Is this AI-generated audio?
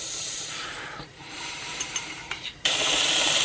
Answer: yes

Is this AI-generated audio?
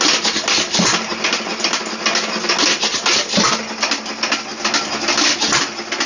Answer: no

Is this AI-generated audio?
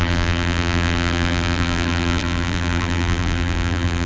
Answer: yes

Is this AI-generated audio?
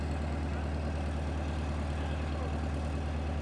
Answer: no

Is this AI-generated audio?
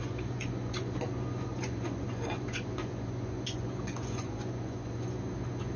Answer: yes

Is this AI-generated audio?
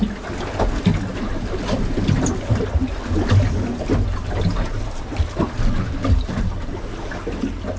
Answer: no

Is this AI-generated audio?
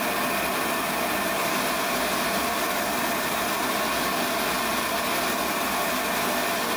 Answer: no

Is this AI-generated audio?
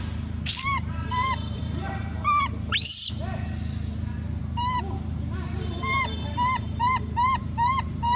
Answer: yes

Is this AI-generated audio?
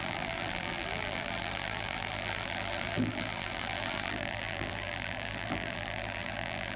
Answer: yes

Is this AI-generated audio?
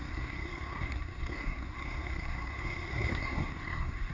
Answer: yes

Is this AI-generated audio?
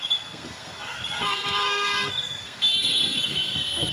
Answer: yes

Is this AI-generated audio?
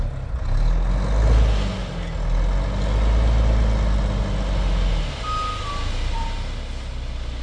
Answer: no